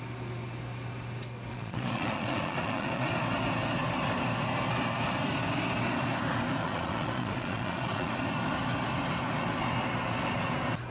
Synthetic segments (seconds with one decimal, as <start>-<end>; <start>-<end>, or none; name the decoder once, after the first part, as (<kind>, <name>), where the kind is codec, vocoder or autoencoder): 1.5-3.1 (vocoder, Vocos); 6.6-8.1